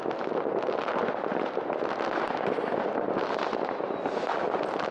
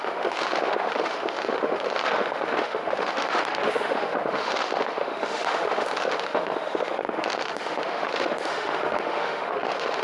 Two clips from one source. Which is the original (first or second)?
first